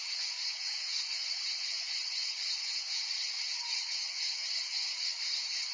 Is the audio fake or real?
fake